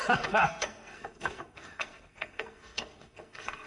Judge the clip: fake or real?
fake